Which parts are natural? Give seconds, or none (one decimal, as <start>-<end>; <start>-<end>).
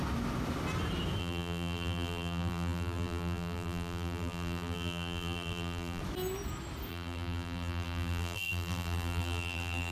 0.0-1.2; 6.0-6.9